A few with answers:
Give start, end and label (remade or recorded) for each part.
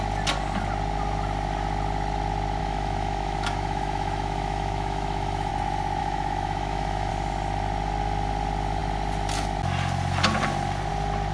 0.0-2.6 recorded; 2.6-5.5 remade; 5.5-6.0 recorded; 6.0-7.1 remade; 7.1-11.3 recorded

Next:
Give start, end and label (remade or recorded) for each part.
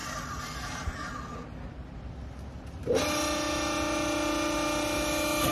0.0-5.5 recorded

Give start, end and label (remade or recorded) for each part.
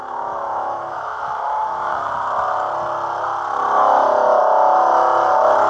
0.0-1.9 remade; 1.9-4.4 recorded; 4.4-4.9 remade; 4.9-5.7 recorded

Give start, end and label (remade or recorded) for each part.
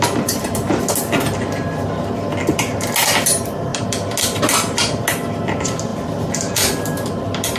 0.0-7.6 recorded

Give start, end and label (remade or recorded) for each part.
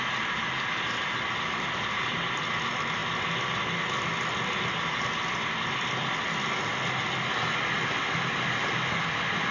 0.0-9.5 recorded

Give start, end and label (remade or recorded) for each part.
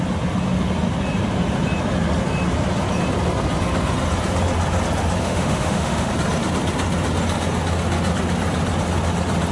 0.0-5.2 recorded; 5.2-6.1 remade; 6.1-9.5 recorded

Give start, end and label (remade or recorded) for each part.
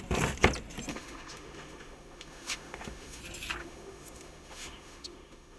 0.0-0.9 recorded; 0.9-3.2 remade; 3.2-3.6 recorded; 3.6-5.6 remade